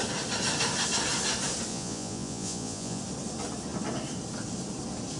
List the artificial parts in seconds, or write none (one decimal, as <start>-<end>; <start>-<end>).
1.7-3.0